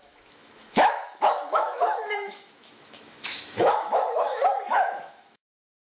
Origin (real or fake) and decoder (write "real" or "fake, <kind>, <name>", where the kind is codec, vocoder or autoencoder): fake, autoencoder, DAC-VAE